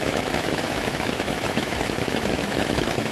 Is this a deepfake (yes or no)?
yes